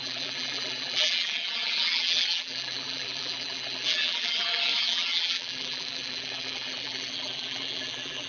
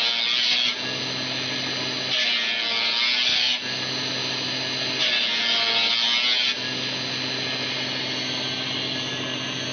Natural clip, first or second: second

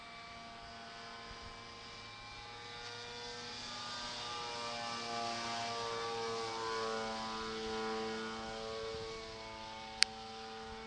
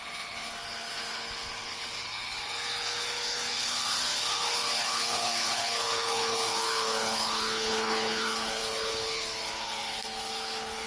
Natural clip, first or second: first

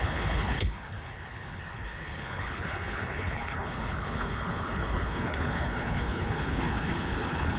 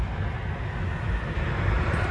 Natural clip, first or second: second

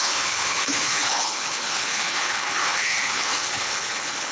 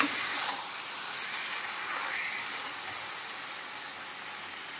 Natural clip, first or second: second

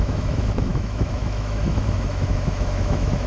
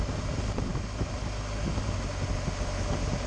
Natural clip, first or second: second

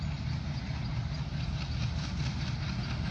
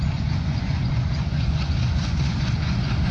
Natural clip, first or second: first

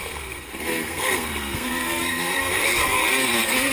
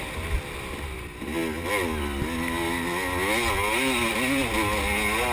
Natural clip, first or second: second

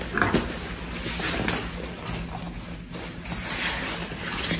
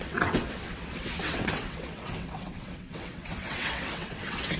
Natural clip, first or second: first